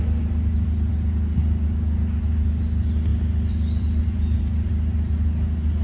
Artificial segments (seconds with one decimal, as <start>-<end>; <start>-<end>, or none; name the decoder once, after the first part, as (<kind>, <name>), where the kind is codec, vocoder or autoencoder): 3.1-4.7 (vocoder, BigVGAN v2)